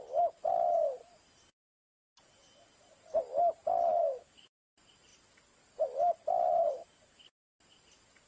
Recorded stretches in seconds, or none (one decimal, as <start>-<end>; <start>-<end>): 0.0-3.9; 4.5-8.3